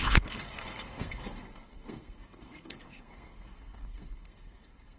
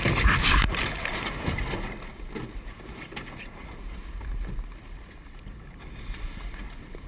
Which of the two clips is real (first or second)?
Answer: second